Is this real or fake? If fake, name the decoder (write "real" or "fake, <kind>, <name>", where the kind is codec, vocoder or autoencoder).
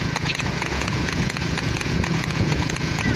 fake, vocoder, Vocos